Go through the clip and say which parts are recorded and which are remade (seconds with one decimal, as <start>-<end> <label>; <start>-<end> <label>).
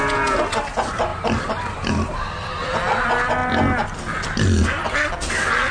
0.0-5.7 recorded